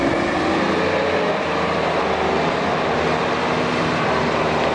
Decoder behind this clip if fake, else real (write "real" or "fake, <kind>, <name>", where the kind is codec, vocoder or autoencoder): real